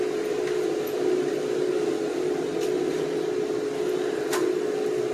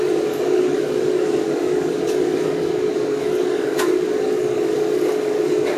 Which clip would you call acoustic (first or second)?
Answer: first